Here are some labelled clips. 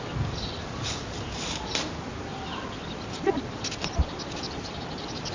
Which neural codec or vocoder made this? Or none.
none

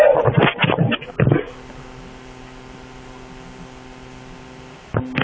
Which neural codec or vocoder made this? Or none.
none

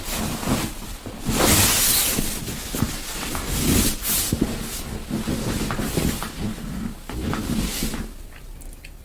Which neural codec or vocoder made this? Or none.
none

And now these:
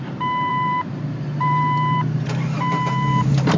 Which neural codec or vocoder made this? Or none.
vocoder, BigVGAN v2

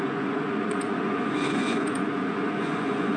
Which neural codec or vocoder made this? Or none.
vocoder, Vocos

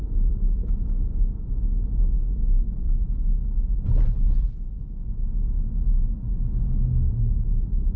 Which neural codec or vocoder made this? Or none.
none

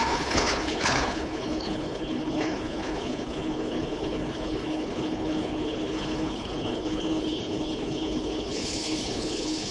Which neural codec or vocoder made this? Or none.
codec, HILCodec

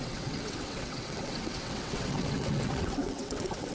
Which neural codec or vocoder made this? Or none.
vocoder, WaveNeXt